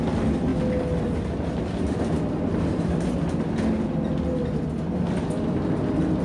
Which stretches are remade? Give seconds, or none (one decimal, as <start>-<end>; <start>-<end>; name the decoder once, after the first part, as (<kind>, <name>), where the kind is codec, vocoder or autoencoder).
none